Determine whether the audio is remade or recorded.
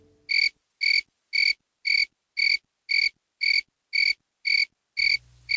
recorded